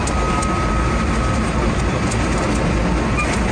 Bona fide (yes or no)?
yes